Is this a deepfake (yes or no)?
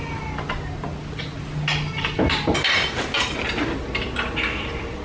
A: no